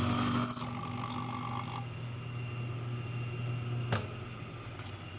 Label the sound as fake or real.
real